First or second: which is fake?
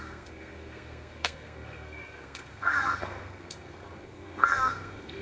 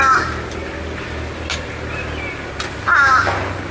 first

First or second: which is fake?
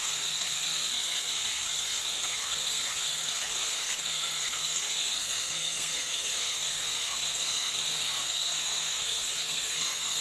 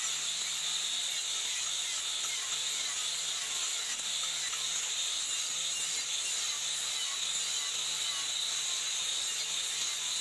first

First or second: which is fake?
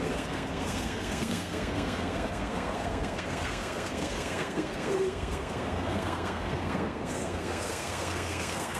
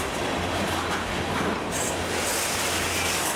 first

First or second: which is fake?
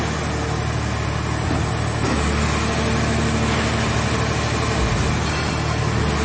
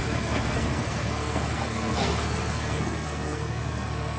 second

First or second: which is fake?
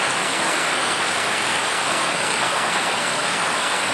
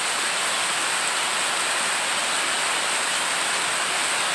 first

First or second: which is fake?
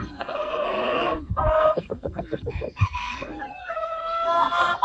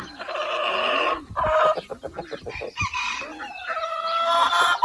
first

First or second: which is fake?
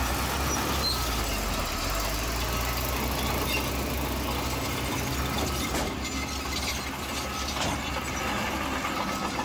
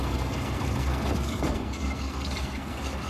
second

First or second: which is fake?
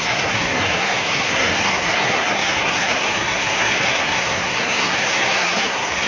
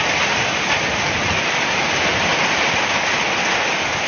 first